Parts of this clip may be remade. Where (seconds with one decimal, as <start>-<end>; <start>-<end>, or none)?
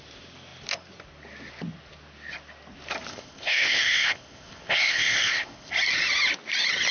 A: 3.1-5.7